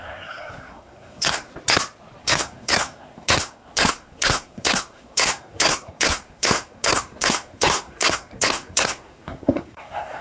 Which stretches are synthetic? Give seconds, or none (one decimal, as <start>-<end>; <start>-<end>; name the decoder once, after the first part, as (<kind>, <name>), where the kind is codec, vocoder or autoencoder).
0.0-1.5 (codec, SNAC); 2.2-10.2